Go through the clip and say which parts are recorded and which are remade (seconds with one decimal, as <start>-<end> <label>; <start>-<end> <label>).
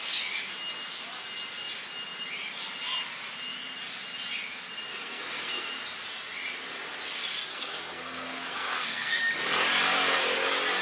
0.0-4.9 recorded; 4.9-5.7 remade; 5.7-7.5 recorded; 7.5-9.2 remade; 9.2-10.8 recorded